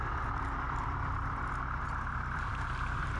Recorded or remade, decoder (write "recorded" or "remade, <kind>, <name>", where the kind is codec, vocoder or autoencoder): remade, vocoder, BigVGAN v2